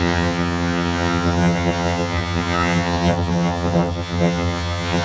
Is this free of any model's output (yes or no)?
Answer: no